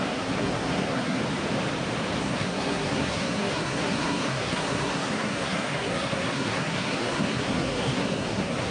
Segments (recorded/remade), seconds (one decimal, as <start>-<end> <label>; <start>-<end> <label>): 0.0-1.2 remade; 1.2-2.2 recorded; 2.2-8.7 remade